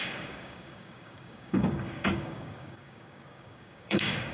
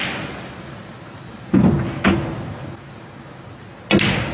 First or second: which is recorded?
second